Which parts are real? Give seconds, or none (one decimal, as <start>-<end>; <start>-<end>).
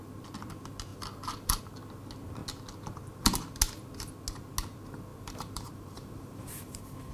0.0-0.9; 1.6-5.1